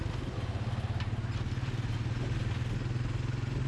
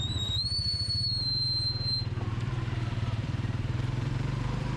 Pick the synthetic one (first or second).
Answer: second